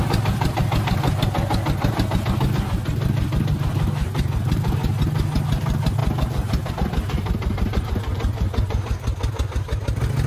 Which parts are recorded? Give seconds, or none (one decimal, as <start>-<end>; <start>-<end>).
0.0-10.3